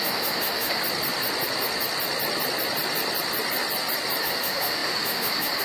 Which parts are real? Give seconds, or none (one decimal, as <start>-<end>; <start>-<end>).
0.8-4.2

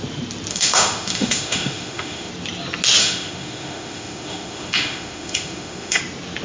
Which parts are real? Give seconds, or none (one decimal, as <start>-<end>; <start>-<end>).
0.0-0.5; 2.3-3.0; 6.0-6.4

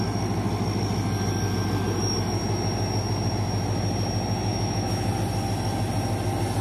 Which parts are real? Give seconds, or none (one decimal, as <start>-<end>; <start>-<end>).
0.0-4.5; 5.1-6.6

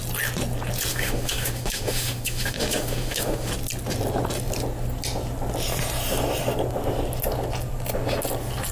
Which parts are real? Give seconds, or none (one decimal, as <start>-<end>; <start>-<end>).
0.0-0.9; 3.5-8.7

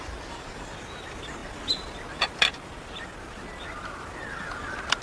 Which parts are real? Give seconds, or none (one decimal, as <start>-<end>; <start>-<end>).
0.0-5.0

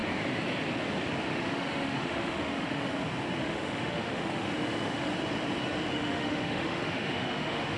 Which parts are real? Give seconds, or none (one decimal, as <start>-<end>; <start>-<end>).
0.0-1.3; 2.9-3.4; 5.1-5.9

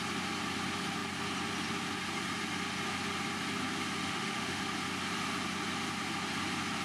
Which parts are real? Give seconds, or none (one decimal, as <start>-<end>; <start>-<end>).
0.0-4.0; 4.6-6.8